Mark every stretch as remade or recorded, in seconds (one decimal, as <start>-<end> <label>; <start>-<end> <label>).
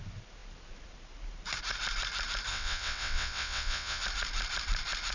0.0-2.5 recorded; 2.5-4.0 remade; 4.0-5.1 recorded